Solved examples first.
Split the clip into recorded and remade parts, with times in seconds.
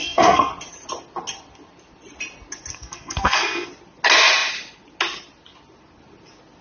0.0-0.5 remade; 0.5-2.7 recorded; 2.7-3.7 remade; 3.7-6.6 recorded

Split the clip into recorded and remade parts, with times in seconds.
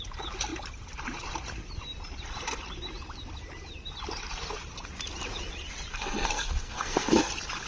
0.0-5.9 recorded; 5.9-7.3 remade; 7.3-7.7 recorded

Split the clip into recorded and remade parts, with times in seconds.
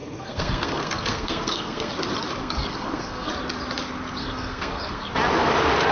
0.0-1.9 remade; 1.9-2.4 recorded; 2.4-3.3 remade; 3.3-4.2 recorded; 4.2-5.1 remade; 5.1-5.9 recorded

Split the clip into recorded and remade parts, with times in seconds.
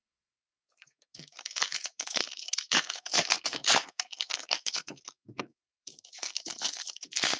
0.0-7.4 remade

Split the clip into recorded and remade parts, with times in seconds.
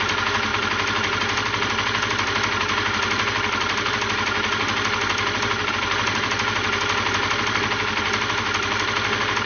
0.0-9.5 recorded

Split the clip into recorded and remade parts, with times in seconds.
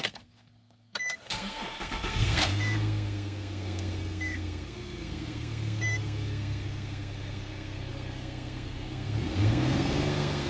0.0-10.5 remade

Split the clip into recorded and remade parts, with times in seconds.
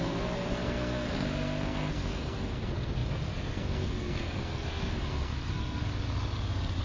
0.0-5.8 remade; 5.8-6.8 recorded